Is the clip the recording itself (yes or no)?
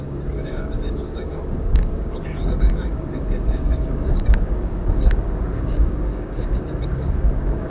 no